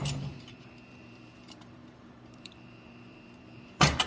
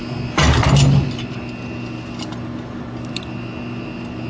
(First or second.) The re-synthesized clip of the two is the first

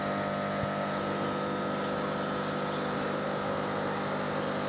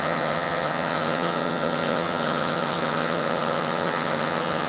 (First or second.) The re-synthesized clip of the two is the second